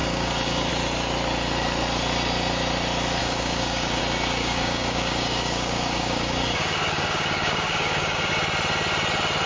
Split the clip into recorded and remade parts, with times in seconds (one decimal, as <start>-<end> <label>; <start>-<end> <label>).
0.0-0.7 remade; 0.7-3.2 recorded; 3.2-4.0 remade; 4.0-4.4 recorded; 4.4-8.3 remade; 8.3-9.5 recorded